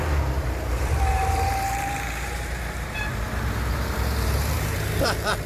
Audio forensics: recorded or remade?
remade